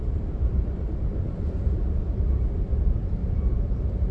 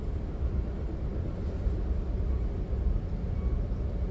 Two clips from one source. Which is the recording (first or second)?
second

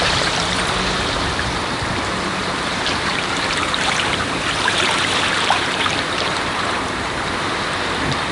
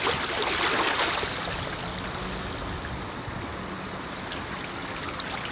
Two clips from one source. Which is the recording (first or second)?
second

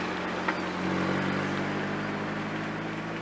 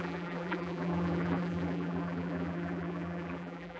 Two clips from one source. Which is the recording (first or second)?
first